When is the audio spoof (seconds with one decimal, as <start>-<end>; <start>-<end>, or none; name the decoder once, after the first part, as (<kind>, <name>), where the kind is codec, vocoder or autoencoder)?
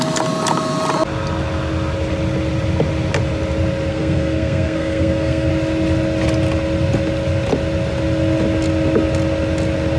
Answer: 3.9-5.5 (codec, SNAC)